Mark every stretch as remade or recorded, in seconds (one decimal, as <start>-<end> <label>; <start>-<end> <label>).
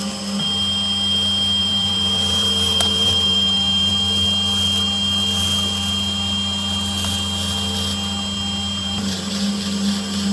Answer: 0.0-1.6 recorded; 1.6-3.9 remade; 3.9-8.8 recorded; 8.8-9.6 remade; 9.6-10.3 recorded